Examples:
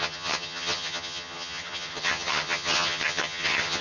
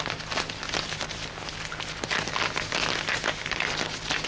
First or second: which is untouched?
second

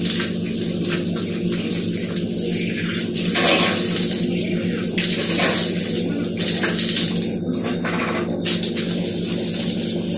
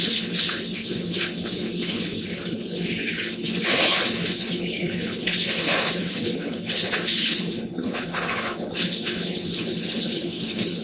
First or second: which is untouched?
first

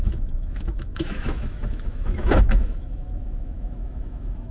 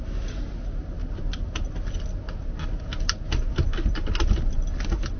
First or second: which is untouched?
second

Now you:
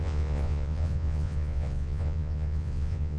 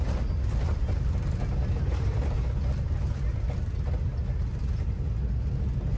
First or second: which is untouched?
second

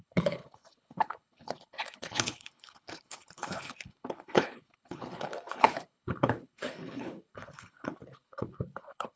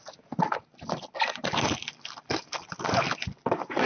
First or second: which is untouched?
second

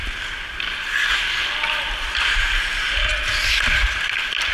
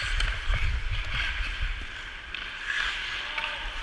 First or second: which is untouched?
first